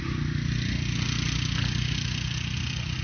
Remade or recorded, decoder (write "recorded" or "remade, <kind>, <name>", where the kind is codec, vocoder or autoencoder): recorded